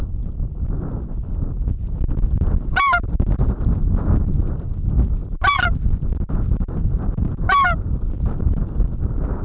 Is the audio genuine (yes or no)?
yes